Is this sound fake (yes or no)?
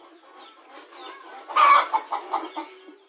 no